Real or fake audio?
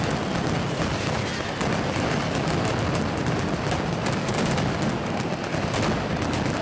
real